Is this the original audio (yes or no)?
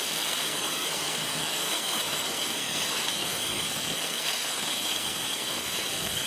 no